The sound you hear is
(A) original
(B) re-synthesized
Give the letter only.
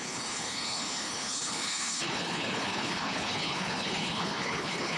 B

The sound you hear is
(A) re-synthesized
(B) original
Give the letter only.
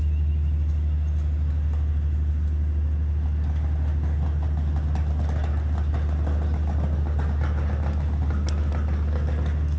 B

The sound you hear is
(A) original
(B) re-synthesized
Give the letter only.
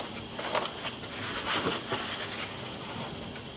A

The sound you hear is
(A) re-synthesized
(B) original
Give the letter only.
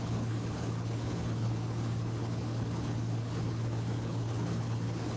A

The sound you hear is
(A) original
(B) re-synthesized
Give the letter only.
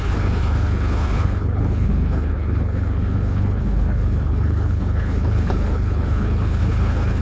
B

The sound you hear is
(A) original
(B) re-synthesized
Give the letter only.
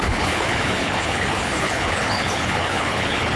B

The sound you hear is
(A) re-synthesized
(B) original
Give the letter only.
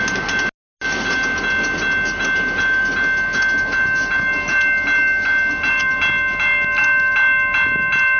B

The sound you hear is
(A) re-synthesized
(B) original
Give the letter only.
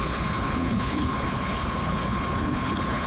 A